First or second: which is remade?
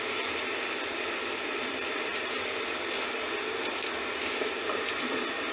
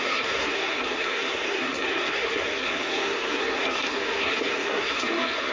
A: second